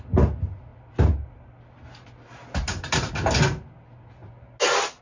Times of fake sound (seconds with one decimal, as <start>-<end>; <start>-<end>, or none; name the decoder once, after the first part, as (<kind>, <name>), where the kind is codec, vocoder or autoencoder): none